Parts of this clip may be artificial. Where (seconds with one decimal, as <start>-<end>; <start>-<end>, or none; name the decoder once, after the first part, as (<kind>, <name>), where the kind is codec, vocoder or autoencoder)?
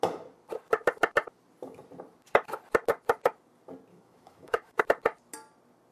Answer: 3.9-4.8 (autoencoder, DAC-VAE)